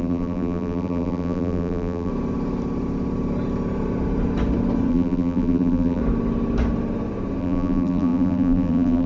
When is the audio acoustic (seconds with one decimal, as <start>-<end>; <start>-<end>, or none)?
2.1-4.9; 6.0-7.4